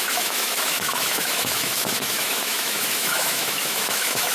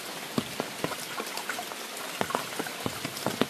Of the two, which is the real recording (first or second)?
second